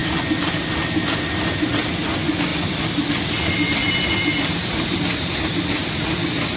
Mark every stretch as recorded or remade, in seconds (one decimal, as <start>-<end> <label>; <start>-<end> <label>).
0.0-2.5 recorded; 2.5-3.2 remade; 3.2-3.8 recorded; 3.8-5.1 remade; 5.1-6.6 recorded